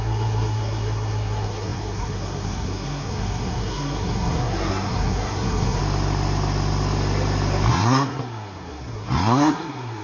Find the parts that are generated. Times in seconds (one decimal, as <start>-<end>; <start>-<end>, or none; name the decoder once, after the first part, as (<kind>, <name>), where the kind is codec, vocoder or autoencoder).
0.0-5.8 (codec, SNAC); 7.7-10.0